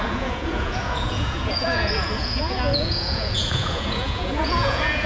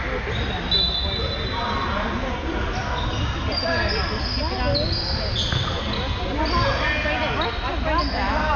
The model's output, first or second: first